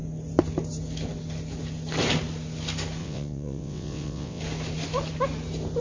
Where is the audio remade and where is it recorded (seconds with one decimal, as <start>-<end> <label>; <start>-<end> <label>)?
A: 0.0-3.0 recorded; 3.0-4.4 remade; 4.4-5.8 recorded